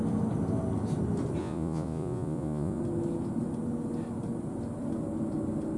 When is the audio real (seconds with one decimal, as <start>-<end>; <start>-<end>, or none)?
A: 0.0-1.4; 2.8-5.8

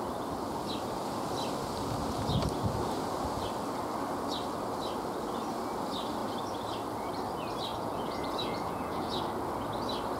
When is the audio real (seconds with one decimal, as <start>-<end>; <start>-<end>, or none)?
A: 0.0-7.7; 9.2-10.2